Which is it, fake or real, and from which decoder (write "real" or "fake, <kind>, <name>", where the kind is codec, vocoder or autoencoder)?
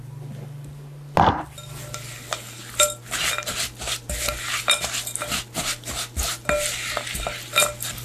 real